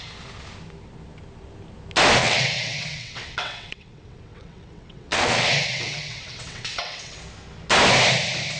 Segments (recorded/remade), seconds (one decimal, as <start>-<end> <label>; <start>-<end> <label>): 0.0-2.2 recorded; 2.2-7.2 remade; 7.2-8.6 recorded